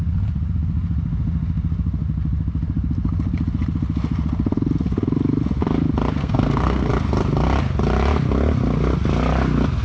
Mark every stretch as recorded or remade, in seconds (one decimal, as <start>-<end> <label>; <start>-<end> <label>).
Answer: 0.0-6.2 recorded; 6.2-6.9 remade; 6.9-9.8 recorded